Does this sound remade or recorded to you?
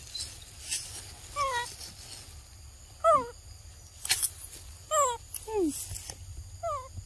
recorded